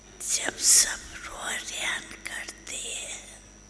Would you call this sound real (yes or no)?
yes